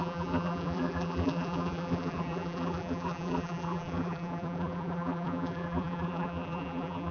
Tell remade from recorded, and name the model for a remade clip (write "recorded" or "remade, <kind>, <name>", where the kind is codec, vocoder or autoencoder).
remade, vocoder, BigVGAN v2